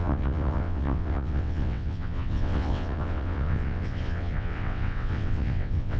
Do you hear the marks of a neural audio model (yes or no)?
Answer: yes